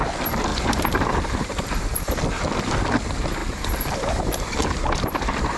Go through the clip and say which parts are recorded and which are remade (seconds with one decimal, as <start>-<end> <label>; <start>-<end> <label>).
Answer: 0.0-0.5 recorded; 0.5-2.2 remade; 2.2-3.4 recorded; 3.4-5.6 remade